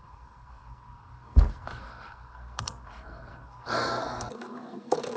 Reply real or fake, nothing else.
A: fake